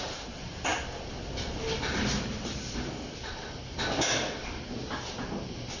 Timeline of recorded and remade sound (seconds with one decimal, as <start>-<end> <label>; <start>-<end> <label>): 0.0-5.8 recorded